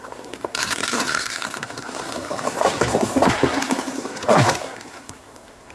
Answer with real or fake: fake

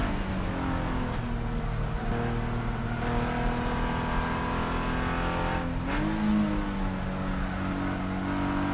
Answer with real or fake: real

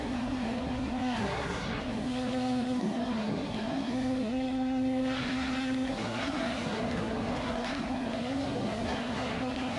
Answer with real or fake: fake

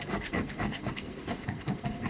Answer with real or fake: fake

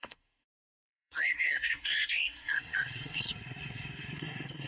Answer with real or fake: fake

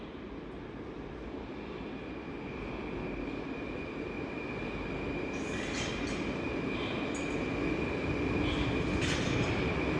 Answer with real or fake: real